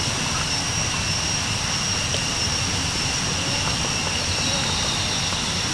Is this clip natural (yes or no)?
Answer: yes